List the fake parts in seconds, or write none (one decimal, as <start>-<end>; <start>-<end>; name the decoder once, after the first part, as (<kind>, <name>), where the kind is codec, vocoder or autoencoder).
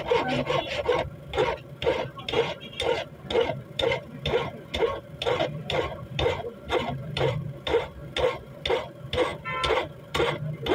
0.0-8.0 (vocoder, BigVGAN v2); 8.7-9.3